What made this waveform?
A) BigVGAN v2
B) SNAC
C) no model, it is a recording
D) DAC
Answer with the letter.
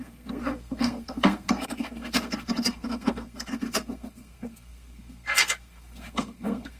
B